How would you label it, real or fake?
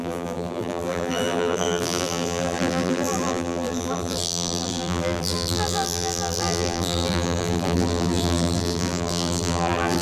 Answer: fake